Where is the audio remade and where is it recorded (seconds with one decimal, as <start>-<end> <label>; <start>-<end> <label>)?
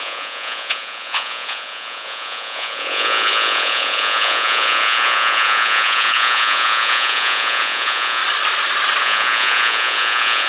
0.0-8.2 remade; 8.2-9.0 recorded; 9.0-10.5 remade